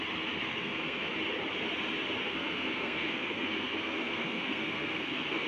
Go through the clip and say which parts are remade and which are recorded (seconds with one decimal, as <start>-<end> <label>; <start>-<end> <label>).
0.0-0.4 recorded; 0.4-1.1 remade; 1.1-2.2 recorded; 2.2-5.5 remade